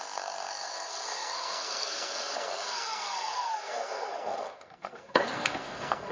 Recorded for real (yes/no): no